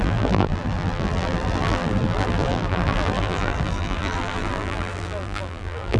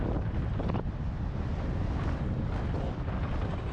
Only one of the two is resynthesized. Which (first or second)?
first